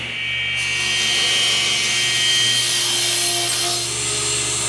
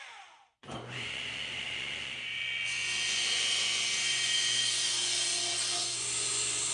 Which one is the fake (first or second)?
second